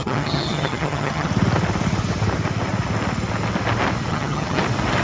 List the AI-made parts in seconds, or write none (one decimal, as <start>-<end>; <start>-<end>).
0.0-1.3; 4.1-4.6